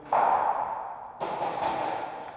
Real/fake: real